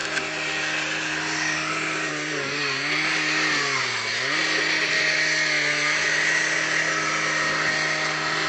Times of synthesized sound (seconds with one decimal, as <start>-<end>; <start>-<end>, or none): none